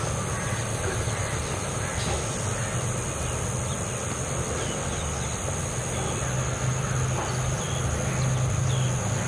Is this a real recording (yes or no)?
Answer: yes